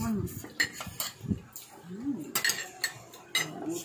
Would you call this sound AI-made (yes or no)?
no